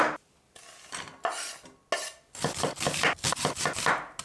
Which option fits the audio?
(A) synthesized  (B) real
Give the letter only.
B